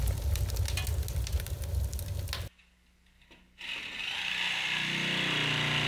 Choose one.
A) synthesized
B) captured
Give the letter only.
B